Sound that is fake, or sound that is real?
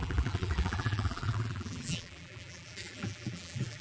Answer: fake